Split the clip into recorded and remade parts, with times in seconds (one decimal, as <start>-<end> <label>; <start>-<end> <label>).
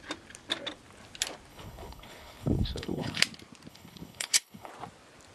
0.0-1.5 recorded; 1.5-3.2 remade; 3.2-3.7 recorded; 3.7-4.7 remade; 4.7-5.3 recorded